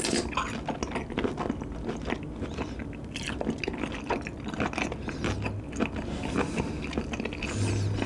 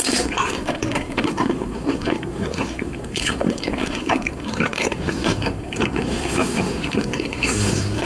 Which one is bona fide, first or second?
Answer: first